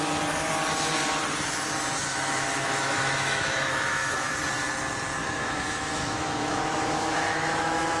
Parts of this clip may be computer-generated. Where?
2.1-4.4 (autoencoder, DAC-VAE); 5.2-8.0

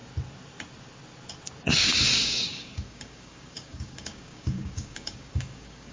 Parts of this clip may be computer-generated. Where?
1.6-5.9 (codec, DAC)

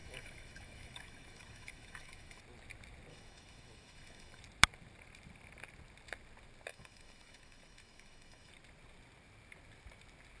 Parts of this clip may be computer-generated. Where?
0.0-2.4 (autoencoder, DAC-VAE); 3.1-4.4; 6.7-8.5

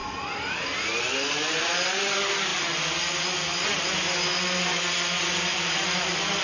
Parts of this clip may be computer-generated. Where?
none

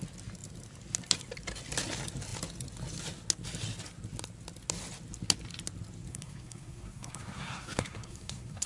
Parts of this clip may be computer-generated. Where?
6.1-8.7 (codec, SNAC)

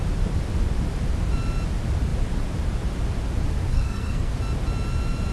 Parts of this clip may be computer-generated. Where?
3.7-4.3 (codec, SNAC)